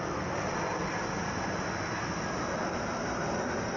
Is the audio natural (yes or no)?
yes